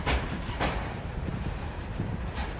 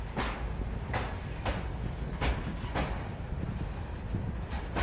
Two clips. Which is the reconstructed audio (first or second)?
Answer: first